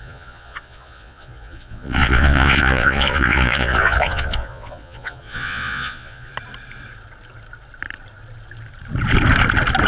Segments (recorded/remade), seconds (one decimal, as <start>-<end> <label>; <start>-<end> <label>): 0.0-6.3 remade; 6.3-9.9 recorded